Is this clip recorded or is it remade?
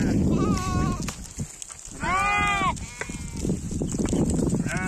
recorded